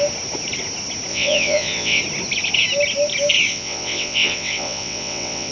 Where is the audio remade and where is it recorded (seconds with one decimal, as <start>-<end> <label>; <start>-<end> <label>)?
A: 0.0-1.1 recorded; 1.1-2.0 remade; 2.0-3.5 recorded; 3.5-5.5 remade